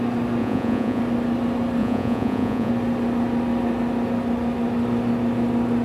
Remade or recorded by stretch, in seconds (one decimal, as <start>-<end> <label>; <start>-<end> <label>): 0.0-0.4 recorded; 0.4-1.0 remade; 1.0-1.8 recorded; 1.8-2.7 remade; 2.7-5.8 recorded

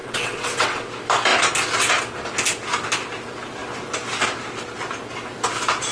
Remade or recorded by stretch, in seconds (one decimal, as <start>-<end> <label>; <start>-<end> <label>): 0.0-0.9 remade; 0.9-5.9 recorded

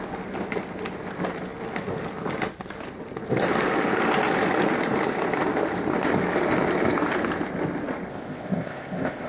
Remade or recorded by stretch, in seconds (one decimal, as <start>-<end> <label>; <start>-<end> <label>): 0.0-8.1 recorded; 8.1-9.3 remade

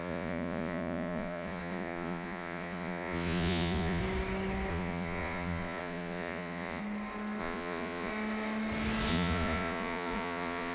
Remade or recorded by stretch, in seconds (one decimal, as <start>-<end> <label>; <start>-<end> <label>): 0.0-4.0 remade; 4.0-4.7 recorded; 4.7-6.8 remade; 6.8-7.4 recorded; 7.4-8.1 remade; 8.1-9.1 recorded; 9.1-10.7 remade